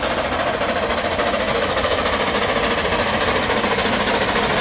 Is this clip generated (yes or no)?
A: no